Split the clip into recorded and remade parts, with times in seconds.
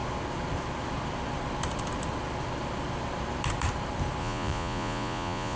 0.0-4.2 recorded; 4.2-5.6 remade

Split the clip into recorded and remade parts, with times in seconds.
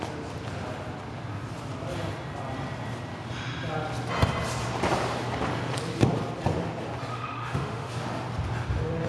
0.0-7.1 recorded; 7.1-7.9 remade; 7.9-9.1 recorded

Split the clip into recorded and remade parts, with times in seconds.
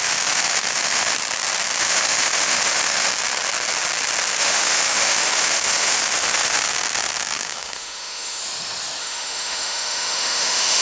0.0-1.2 remade; 1.2-1.8 recorded; 1.8-3.1 remade; 3.1-4.4 recorded; 4.4-8.4 remade; 8.4-9.0 recorded; 9.0-10.8 remade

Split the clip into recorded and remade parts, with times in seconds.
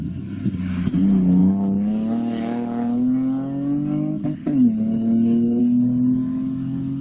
0.0-1.4 recorded; 1.4-5.6 remade; 5.6-7.0 recorded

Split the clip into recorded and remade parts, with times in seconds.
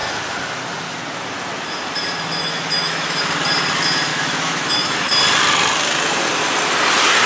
0.0-2.4 recorded; 2.4-3.2 remade; 3.2-4.1 recorded; 4.1-5.1 remade; 5.1-7.3 recorded